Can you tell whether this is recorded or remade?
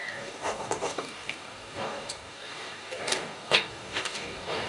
remade